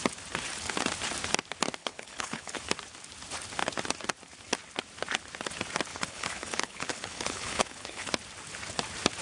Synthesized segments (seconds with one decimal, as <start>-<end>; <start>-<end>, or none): 1.8-2.6; 5.9-8.1